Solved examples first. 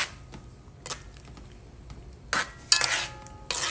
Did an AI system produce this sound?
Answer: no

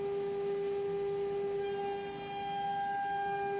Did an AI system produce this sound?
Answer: no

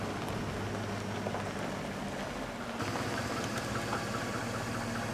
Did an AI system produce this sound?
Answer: no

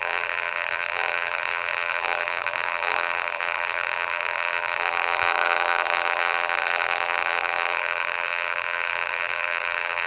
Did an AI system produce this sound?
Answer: yes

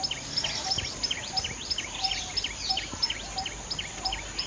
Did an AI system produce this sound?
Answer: no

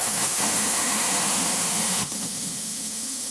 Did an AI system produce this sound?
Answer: yes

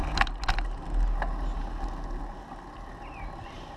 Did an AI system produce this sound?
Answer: no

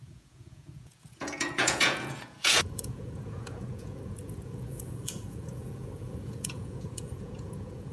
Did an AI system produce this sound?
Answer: yes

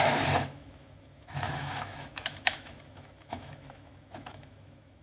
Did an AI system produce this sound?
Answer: yes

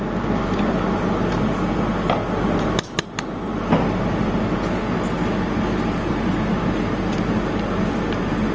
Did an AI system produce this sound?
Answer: no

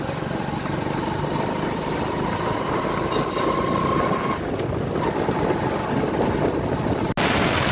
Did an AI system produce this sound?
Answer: no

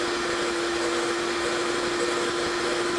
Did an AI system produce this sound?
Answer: no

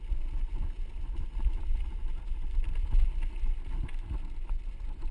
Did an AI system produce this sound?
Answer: no